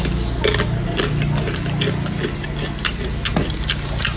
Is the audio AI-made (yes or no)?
no